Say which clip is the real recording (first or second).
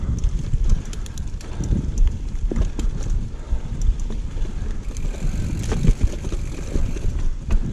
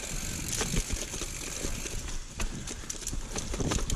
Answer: second